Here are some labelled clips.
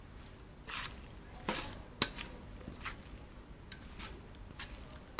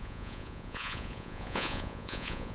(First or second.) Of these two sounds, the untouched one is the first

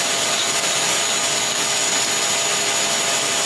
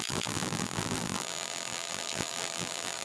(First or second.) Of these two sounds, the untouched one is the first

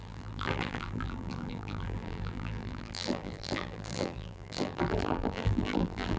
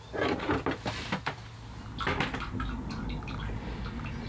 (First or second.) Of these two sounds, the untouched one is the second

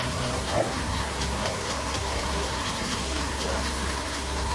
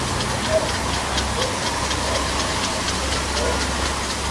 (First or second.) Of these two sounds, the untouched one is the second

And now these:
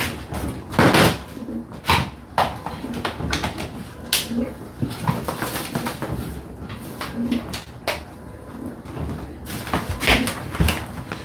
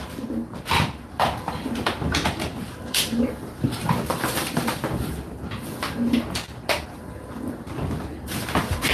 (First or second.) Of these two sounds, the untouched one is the first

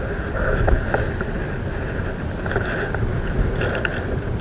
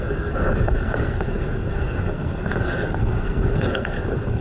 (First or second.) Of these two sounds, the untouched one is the first